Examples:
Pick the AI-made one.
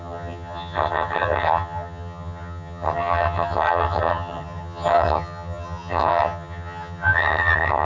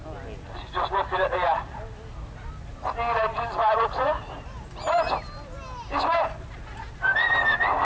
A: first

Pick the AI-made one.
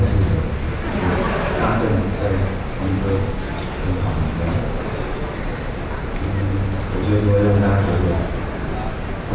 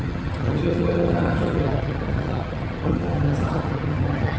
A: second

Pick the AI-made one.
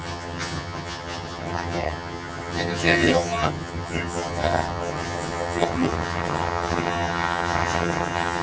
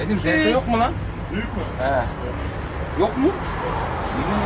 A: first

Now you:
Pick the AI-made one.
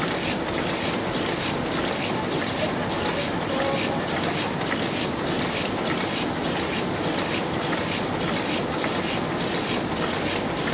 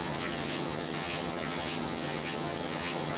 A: second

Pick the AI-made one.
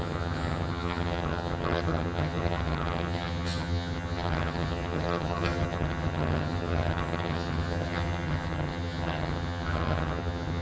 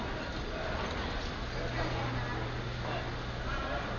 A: first